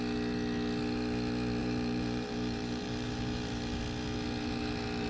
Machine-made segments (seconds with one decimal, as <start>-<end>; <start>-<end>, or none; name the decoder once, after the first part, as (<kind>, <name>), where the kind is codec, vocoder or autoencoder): 1.6-3.8 (vocoder, BigVGAN v2)